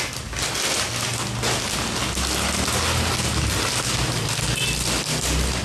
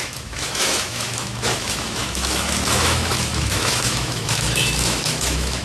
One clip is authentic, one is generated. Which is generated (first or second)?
second